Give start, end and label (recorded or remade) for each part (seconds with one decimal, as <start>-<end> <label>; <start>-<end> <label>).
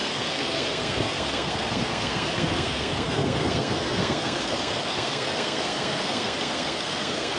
0.0-7.4 remade